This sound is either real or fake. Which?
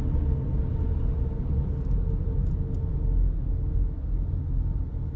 real